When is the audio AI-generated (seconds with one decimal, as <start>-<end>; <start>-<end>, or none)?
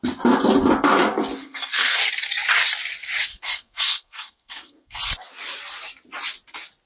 1.4-2.0; 3.3-5.3